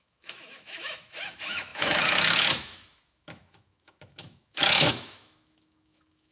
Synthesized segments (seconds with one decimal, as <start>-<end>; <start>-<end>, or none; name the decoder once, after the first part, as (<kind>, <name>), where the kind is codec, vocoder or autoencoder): 0.0-6.3 (autoencoder, DAC-VAE)